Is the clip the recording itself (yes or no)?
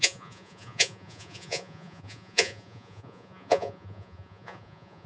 no